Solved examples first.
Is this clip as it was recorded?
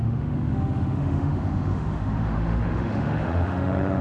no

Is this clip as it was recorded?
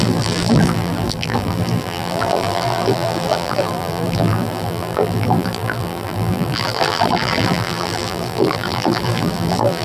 no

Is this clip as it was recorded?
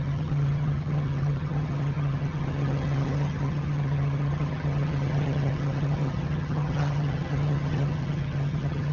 no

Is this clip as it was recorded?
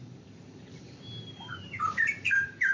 no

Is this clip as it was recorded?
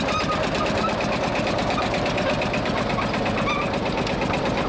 yes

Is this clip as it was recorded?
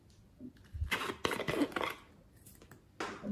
yes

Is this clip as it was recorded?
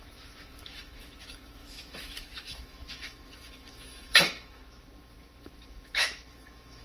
no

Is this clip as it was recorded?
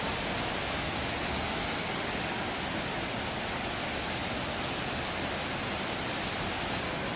yes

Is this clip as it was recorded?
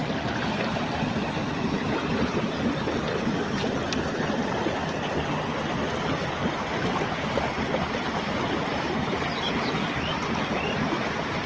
yes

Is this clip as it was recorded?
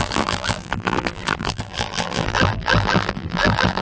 no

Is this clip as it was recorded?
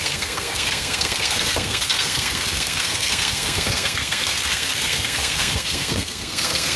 no